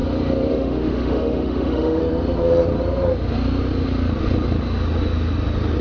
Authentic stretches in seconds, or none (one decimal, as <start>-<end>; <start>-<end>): 0.0-0.5; 2.0-5.8